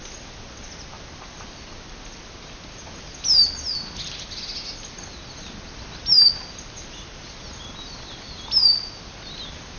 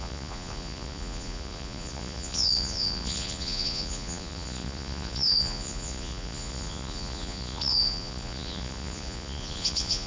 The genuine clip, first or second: first